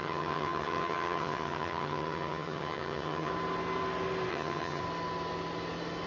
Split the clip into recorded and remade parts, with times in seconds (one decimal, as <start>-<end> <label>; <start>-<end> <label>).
0.0-3.3 remade; 3.3-4.3 recorded; 4.3-4.8 remade; 4.8-6.1 recorded